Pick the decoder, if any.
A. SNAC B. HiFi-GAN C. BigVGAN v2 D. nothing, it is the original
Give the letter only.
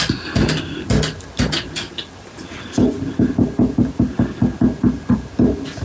D